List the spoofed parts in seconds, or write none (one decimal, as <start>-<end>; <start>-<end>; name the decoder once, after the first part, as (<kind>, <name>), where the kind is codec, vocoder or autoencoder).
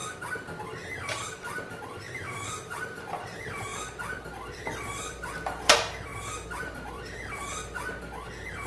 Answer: 1.1-3.7 (vocoder, BigVGAN v2); 4.3-6.1; 6.6-7.9